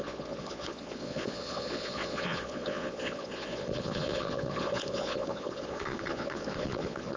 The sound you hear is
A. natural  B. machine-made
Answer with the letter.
B